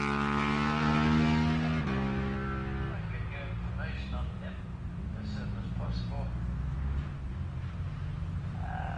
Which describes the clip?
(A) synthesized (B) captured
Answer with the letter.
B